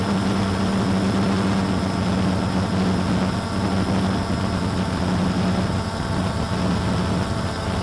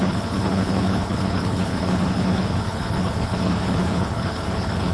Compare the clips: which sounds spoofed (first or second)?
second